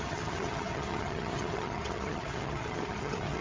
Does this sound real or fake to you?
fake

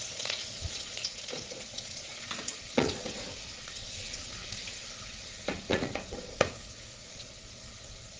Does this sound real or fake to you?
fake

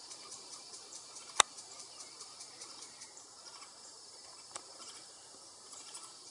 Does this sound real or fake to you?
fake